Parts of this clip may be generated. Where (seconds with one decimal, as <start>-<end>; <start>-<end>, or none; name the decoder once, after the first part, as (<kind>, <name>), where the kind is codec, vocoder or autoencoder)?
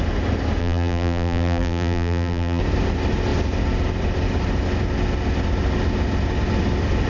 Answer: 0.6-2.6 (vocoder, BigVGAN v2)